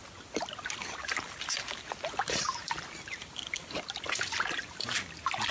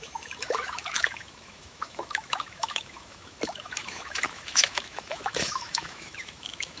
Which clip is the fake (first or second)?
second